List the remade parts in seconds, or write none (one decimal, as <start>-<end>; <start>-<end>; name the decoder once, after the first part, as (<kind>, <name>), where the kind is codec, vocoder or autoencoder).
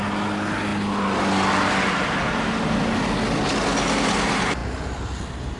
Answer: none